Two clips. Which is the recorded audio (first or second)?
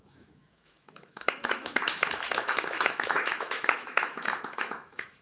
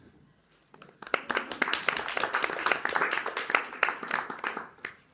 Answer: second